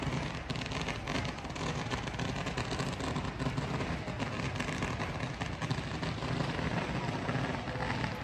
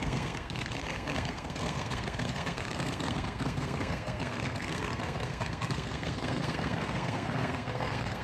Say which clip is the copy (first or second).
second